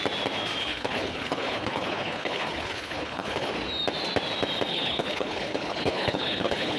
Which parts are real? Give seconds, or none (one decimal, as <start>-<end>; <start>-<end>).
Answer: 0.0-0.6; 3.5-4.7